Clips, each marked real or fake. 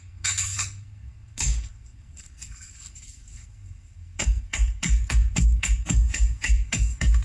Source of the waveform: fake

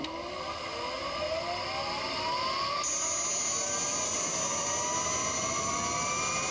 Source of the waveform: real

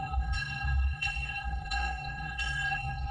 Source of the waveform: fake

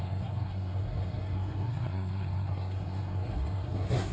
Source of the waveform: fake